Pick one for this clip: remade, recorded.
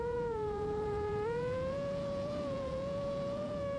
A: remade